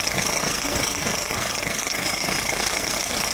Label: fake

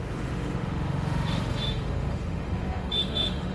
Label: fake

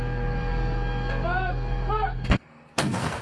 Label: fake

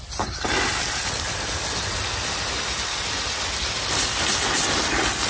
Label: real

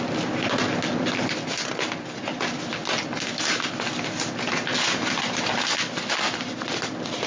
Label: real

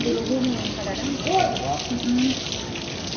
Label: real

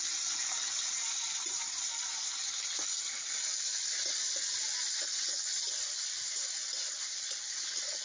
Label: real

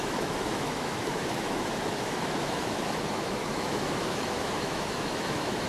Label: fake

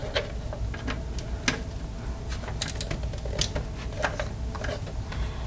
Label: real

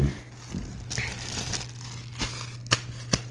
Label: real